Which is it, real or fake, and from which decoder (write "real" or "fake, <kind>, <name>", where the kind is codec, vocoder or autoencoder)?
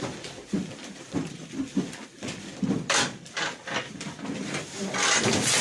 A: fake, vocoder, BigVGAN v2